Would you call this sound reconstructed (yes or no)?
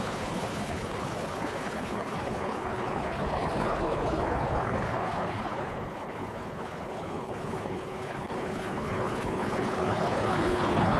yes